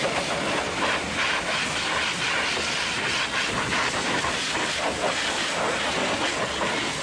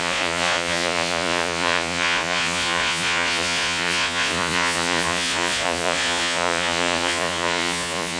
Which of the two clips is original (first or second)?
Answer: first